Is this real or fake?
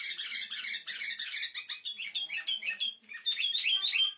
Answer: real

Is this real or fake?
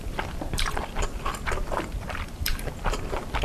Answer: fake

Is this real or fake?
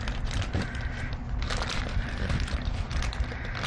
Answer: fake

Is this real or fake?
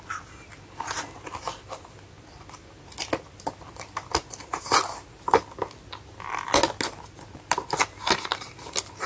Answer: real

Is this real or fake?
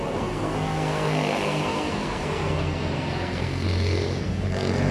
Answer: fake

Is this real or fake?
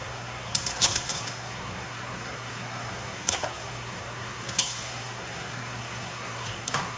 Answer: fake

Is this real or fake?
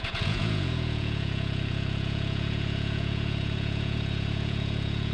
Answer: fake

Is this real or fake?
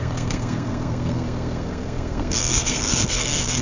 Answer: fake